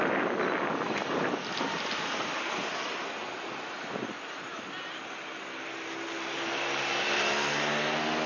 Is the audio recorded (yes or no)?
yes